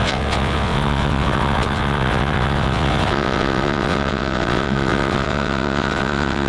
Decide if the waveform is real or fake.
fake